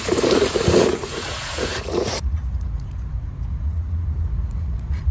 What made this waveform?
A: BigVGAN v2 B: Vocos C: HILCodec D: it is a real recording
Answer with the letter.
B